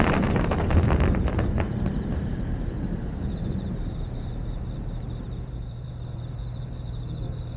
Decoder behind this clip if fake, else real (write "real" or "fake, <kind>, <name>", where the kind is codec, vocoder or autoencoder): fake, vocoder, BigVGAN v2